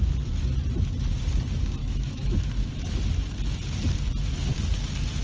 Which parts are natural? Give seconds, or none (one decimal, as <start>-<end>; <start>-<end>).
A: 0.0-1.8; 3.0-5.2

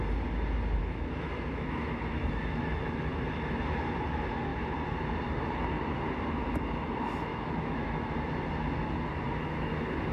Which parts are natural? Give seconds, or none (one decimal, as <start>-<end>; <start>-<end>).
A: 0.0-0.8; 3.1-7.3; 8.1-10.1

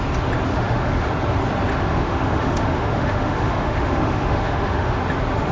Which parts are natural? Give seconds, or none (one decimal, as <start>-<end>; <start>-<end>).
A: 0.0-0.5; 1.1-1.7; 5.0-5.5